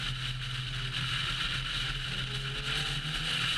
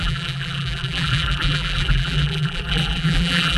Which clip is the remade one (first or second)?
second